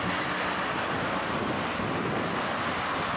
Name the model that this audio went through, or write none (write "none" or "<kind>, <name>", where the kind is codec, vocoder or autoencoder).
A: none